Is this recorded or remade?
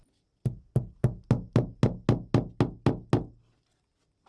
recorded